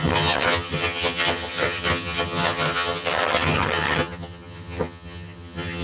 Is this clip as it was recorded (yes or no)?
no